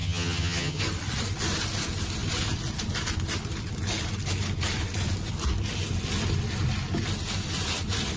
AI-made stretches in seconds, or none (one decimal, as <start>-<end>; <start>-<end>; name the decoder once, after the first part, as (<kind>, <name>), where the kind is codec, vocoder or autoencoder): 0.0-0.8 (vocoder, HiFi-GAN)

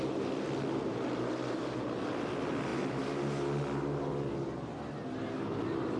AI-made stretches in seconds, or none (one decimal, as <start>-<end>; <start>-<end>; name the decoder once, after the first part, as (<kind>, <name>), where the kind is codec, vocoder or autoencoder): none

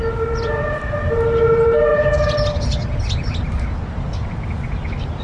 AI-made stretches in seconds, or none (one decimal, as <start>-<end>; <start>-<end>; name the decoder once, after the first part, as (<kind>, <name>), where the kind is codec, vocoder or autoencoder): none

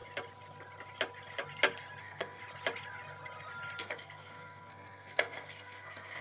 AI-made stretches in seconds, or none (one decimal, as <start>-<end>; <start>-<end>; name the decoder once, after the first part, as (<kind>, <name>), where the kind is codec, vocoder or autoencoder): 2.0-2.4 (codec, SNAC); 3.8-6.2